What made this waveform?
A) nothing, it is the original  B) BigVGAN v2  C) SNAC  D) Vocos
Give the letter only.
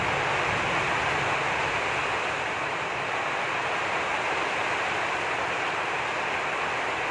A